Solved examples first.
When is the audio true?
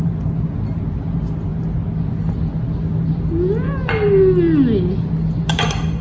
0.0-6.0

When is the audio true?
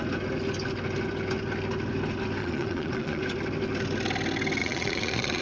0.0-2.4; 3.2-4.6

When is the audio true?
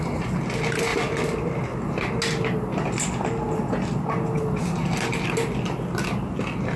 0.0-6.8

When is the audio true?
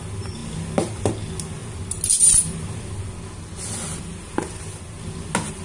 0.0-5.6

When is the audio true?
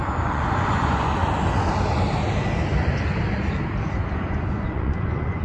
1.2-4.1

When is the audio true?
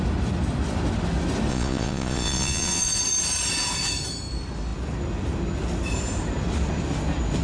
0.0-1.5; 3.0-7.4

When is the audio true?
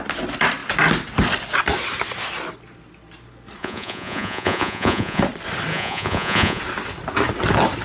0.0-3.6; 5.2-5.7; 6.6-7.8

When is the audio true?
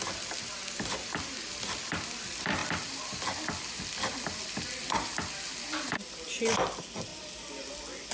0.0-8.1